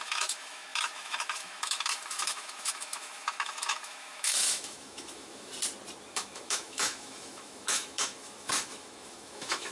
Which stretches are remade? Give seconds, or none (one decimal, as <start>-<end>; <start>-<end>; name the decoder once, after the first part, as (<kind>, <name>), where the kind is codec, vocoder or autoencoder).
0.0-5.5 (autoencoder, DAC-VAE); 6.1-9.7

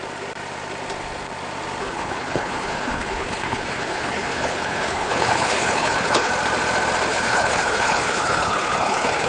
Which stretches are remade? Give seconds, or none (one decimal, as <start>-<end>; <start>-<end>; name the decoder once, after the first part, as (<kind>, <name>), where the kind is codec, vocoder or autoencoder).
1.8-6.3 (codec, HILCodec); 7.1-9.3

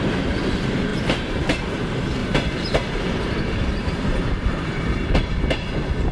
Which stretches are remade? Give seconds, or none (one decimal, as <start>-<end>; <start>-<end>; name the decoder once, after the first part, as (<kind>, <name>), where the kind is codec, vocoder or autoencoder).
0.9-1.6 (vocoder, BigVGAN v2); 2.2-5.4

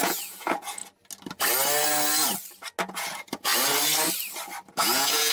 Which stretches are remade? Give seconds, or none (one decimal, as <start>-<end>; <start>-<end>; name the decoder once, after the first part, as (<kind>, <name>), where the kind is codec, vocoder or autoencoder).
0.0-0.8 (vocoder, Vocos); 2.8-3.5; 4.7-5.3

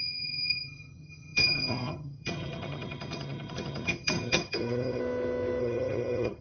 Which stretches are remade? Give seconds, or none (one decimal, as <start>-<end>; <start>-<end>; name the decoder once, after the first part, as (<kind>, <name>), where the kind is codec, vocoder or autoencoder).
0.0-5.0 (vocoder, HiFi-GAN); 5.6-6.4

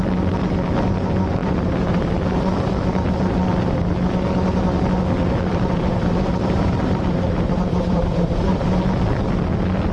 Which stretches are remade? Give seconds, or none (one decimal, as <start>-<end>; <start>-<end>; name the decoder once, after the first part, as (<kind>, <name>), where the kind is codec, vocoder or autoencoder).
1.4-2.2 (vocoder, BigVGAN v2); 5.5-8.5

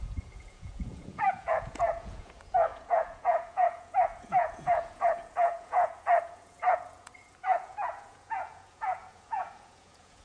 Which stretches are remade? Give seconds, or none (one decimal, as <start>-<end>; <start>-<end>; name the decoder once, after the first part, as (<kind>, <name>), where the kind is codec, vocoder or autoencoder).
0.0-10.2 (vocoder, Vocos)

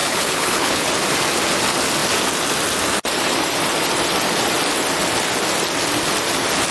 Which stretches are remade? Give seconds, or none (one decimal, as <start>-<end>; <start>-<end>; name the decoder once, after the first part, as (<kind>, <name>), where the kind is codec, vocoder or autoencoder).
0.0-0.9 (codec, HILCodec)